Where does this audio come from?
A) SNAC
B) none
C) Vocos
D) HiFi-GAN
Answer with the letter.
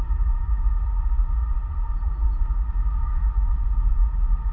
C